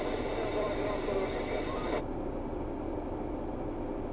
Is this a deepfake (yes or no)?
no